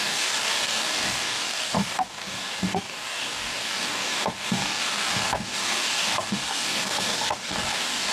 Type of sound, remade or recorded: remade